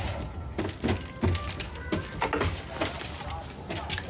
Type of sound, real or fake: real